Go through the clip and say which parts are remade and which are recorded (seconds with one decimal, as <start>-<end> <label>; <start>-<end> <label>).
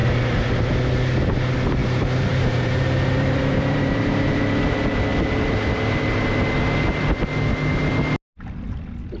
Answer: 0.0-0.7 remade; 0.7-1.8 recorded; 1.8-4.4 remade; 4.4-9.2 recorded